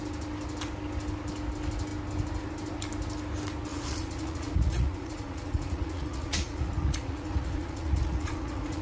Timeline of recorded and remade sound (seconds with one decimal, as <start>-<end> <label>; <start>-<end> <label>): 0.0-3.7 recorded; 3.7-8.8 remade